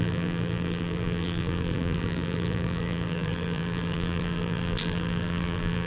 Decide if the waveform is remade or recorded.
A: remade